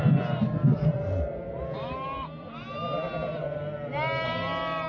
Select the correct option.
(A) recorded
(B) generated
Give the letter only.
A